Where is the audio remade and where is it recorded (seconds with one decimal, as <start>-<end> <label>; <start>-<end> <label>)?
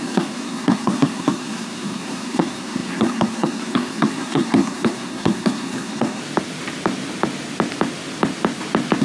0.0-6.2 remade; 6.2-9.0 recorded